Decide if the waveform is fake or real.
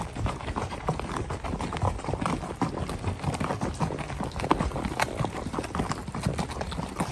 real